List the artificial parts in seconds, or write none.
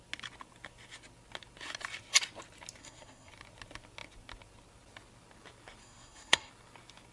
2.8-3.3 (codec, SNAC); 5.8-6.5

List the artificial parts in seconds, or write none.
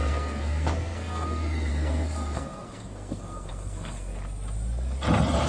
0.0-4.1 (codec, SNAC)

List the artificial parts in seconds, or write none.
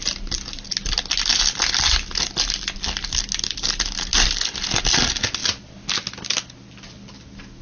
none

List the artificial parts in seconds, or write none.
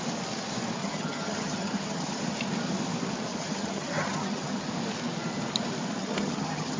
0.8-2.2 (vocoder, HiFi-GAN); 3.3-4.7; 6.0-6.8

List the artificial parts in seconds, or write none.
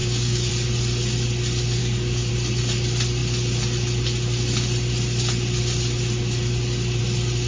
0.0-0.5 (codec, DAC); 1.8-2.3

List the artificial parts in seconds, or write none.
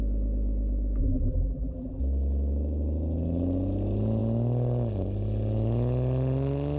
1.0-2.0 (vocoder, BigVGAN v2)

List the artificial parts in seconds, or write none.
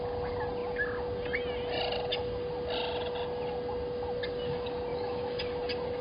4.9-5.4 (autoencoder, DAC-VAE)